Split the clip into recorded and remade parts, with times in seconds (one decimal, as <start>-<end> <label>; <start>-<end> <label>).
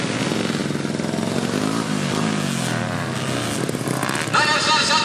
0.0-5.0 recorded